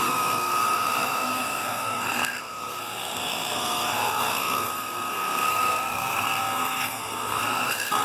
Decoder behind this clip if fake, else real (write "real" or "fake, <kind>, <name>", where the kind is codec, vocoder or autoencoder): fake, codec, SNAC